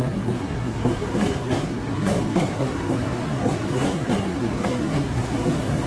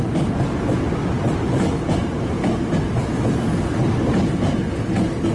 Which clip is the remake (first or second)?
first